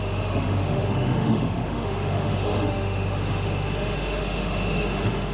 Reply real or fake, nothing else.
fake